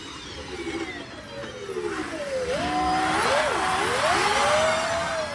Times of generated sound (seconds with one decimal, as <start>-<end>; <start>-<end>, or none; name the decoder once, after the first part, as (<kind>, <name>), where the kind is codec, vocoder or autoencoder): none